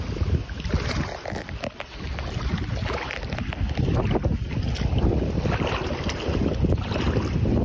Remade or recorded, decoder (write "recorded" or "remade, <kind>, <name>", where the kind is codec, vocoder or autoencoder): recorded